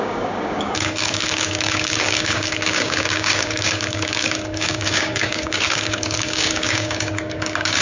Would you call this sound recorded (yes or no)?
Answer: no